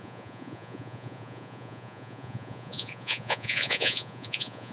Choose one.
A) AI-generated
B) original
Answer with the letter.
A